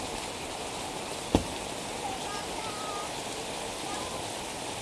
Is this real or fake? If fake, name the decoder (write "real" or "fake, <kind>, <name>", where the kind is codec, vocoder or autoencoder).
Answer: real